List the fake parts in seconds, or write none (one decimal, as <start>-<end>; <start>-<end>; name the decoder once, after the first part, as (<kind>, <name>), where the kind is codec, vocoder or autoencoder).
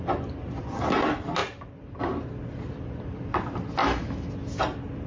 3.8-4.3 (autoencoder, DAC-VAE)